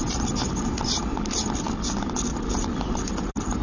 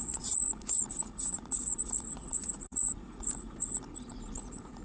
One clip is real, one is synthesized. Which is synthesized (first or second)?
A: second